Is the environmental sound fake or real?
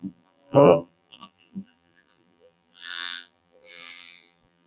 fake